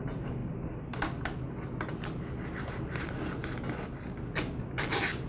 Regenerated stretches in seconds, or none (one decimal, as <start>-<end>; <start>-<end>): none